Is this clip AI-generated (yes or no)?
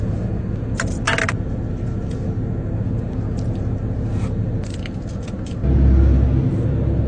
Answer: no